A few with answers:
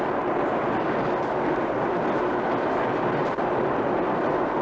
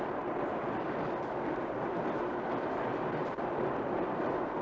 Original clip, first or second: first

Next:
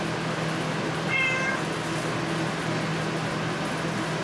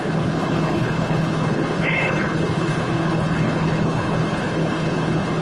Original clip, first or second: first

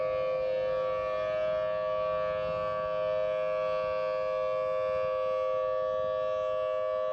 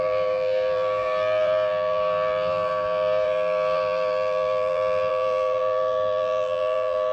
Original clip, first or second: first